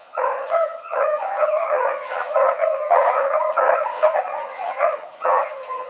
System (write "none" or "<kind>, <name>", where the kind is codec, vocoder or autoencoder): vocoder, HiFi-GAN